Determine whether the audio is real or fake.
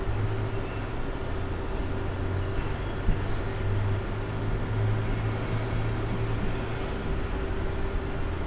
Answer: real